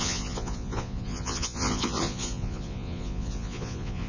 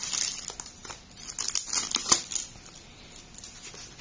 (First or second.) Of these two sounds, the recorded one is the second